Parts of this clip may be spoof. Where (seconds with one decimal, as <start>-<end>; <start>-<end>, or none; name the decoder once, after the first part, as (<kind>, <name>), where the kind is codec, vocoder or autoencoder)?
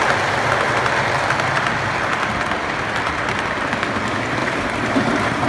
4.4-5.5 (vocoder, BigVGAN v2)